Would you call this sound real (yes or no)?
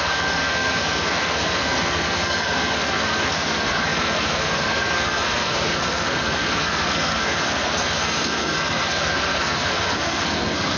no